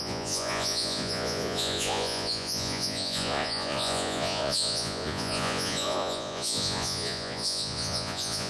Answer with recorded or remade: remade